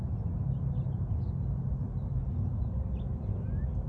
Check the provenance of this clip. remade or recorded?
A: recorded